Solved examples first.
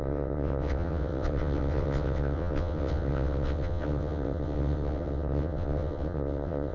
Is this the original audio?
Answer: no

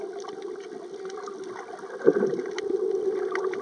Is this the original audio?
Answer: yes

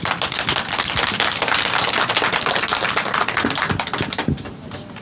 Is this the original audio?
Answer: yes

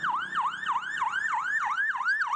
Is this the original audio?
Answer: yes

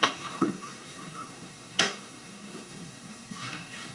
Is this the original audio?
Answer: no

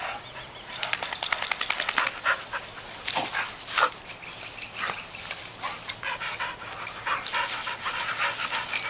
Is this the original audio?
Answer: yes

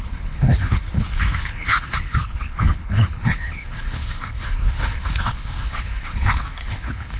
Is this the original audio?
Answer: no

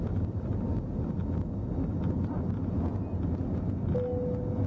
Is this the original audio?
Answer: yes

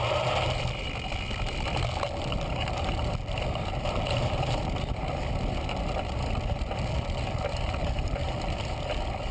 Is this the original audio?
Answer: yes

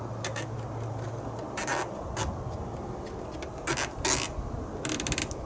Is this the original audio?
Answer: yes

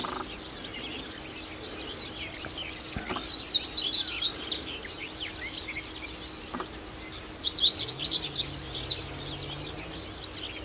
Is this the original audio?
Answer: yes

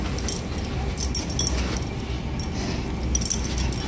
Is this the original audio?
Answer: yes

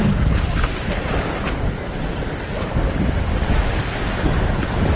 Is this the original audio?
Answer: yes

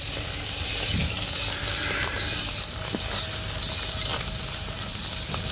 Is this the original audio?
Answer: yes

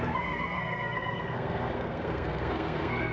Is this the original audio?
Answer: no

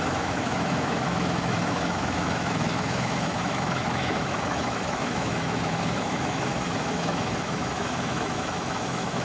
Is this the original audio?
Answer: no